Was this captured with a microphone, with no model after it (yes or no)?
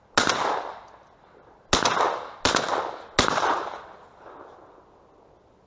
yes